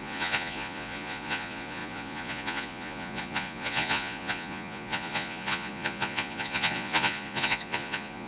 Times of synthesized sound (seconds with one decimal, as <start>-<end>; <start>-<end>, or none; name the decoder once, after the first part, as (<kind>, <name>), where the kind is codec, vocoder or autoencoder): 0.0-8.3 (vocoder, Vocos)